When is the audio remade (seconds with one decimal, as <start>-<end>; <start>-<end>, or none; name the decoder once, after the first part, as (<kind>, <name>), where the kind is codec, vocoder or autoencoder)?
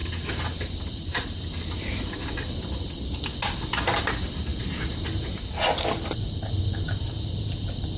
none